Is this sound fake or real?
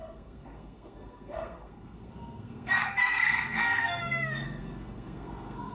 fake